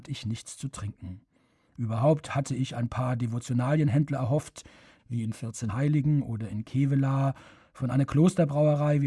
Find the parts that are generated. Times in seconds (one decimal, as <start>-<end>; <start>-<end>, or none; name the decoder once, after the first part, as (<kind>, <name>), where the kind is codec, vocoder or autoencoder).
5.0-5.7 (codec, SNAC)